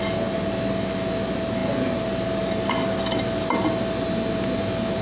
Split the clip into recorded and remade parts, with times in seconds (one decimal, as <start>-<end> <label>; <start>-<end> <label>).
0.0-5.0 recorded

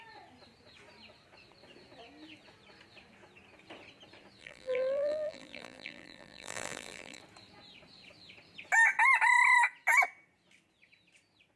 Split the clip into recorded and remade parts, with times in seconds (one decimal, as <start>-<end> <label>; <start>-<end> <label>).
0.0-4.4 recorded; 4.4-7.2 remade; 7.2-11.6 recorded

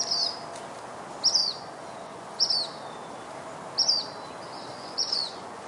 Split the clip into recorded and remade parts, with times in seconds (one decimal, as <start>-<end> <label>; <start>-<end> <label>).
0.0-1.4 recorded; 1.4-2.5 remade; 2.5-4.7 recorded; 4.7-5.7 remade